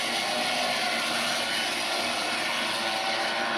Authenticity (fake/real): real